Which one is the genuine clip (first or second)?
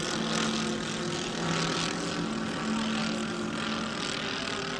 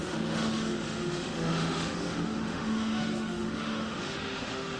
first